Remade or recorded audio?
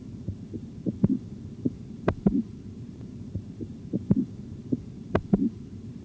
remade